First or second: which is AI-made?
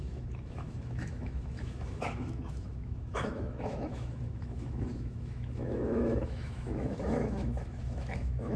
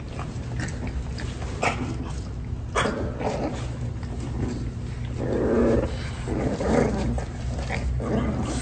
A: first